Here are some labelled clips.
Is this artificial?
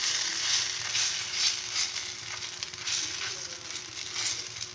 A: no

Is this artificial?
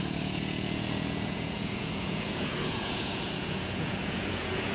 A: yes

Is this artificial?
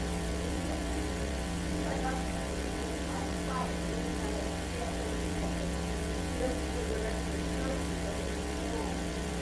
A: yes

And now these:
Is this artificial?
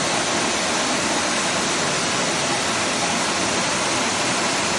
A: no